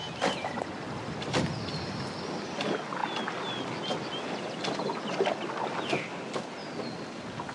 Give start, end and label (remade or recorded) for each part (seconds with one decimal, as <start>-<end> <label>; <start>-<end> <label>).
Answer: 0.0-7.5 recorded